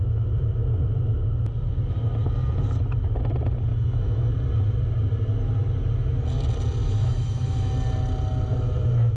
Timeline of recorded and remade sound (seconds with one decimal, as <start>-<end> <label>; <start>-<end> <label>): 0.0-3.7 recorded; 3.7-4.3 remade; 4.3-6.8 recorded; 6.8-7.7 remade; 7.7-9.2 recorded